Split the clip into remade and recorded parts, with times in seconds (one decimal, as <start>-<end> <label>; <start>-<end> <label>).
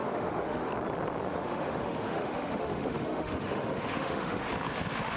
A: 0.0-0.7 remade; 0.7-1.3 recorded; 1.3-4.4 remade; 4.4-5.2 recorded